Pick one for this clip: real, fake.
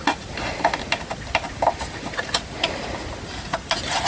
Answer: real